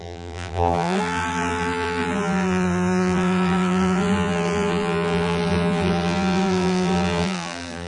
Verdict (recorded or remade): remade